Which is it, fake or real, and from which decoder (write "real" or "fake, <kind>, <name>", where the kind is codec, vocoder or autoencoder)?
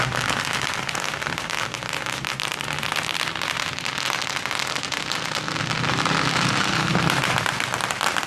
real